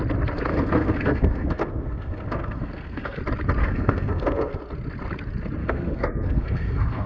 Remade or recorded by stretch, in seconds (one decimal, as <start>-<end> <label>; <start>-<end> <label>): 0.0-0.5 recorded; 0.5-3.2 remade; 3.2-3.6 recorded; 3.6-4.6 remade; 4.6-5.6 recorded; 5.6-7.1 remade